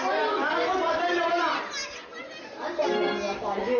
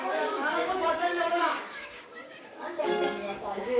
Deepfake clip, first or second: second